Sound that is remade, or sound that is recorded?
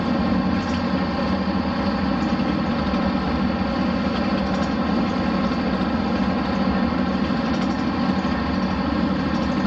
recorded